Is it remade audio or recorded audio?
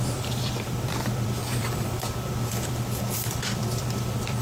remade